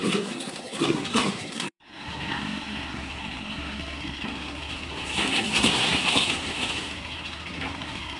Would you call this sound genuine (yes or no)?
no